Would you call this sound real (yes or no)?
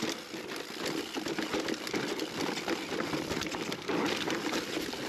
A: yes